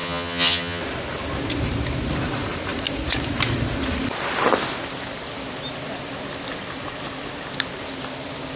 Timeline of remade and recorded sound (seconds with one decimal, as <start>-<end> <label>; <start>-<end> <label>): 0.0-0.8 remade; 0.8-8.6 recorded